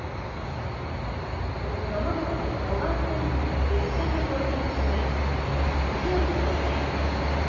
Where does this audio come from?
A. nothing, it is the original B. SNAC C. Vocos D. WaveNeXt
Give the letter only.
A